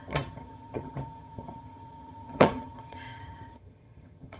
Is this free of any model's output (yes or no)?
no